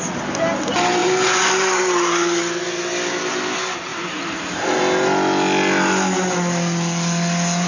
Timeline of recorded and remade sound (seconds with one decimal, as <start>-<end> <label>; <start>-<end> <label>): 0.0-1.0 recorded; 1.0-2.4 remade; 2.4-3.9 recorded; 3.9-4.8 remade; 4.8-7.7 recorded